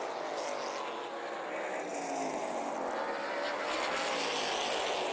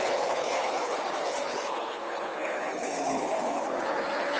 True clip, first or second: first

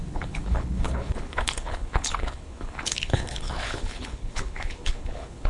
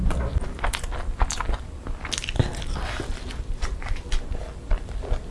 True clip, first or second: second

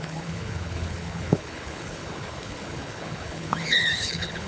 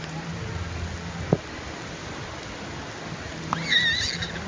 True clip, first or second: second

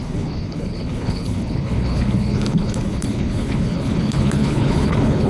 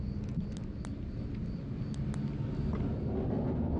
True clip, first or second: second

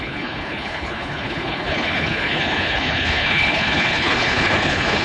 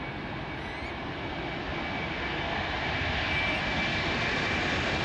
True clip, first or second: second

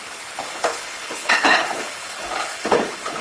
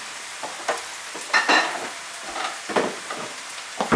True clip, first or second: second